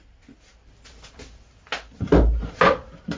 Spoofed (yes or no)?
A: no